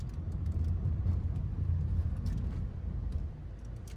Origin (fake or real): real